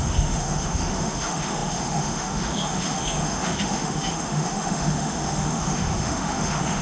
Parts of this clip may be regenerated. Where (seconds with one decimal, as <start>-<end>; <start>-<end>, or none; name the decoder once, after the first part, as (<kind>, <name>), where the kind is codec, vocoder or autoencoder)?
0.0-6.8 (autoencoder, DAC-VAE)